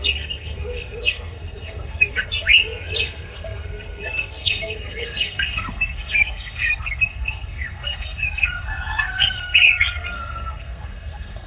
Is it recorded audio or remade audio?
remade